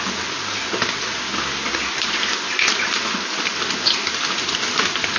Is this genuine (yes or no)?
yes